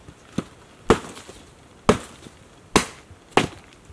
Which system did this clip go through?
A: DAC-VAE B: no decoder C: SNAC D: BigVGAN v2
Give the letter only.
B